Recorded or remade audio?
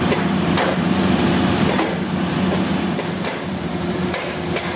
remade